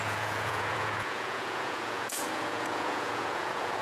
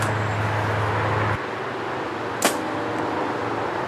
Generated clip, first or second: first